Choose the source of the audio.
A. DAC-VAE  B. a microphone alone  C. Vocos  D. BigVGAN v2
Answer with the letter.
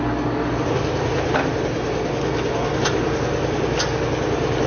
B